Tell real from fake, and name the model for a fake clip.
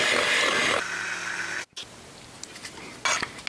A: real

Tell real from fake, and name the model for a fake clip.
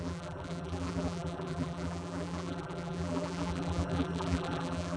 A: fake, vocoder, BigVGAN v2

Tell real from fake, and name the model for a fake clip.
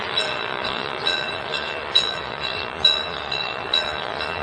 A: fake, vocoder, Vocos